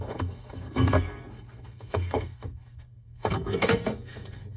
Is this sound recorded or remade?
remade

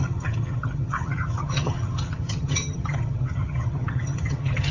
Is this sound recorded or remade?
remade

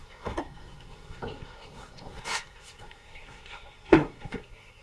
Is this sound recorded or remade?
remade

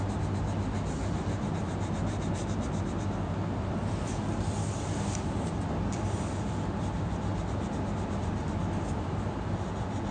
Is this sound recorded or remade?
recorded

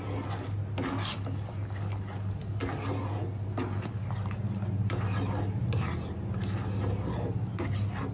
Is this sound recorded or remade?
recorded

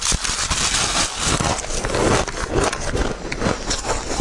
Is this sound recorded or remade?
recorded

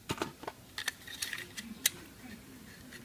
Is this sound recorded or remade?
recorded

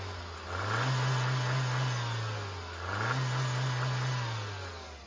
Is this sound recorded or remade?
recorded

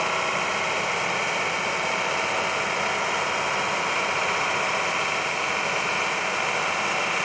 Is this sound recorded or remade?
recorded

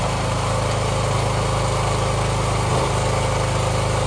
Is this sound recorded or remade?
recorded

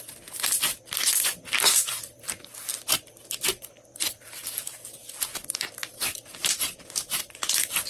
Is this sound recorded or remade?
recorded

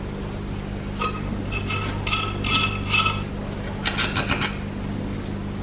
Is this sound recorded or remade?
recorded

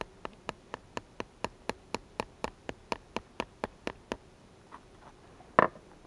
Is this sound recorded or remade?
recorded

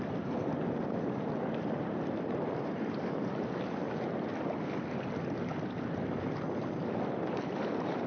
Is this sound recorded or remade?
recorded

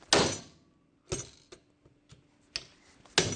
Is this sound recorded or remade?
recorded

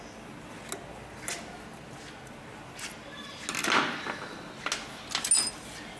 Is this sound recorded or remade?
recorded